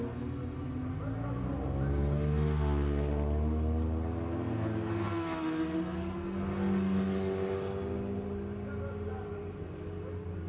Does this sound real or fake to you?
real